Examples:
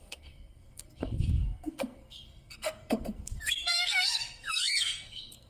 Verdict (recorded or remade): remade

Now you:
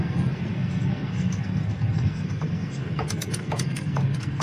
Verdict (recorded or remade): remade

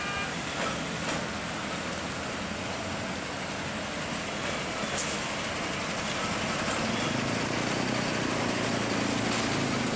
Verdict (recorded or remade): recorded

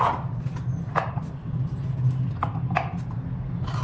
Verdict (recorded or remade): recorded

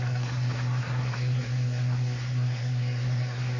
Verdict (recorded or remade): remade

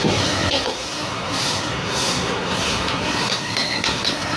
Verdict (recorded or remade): remade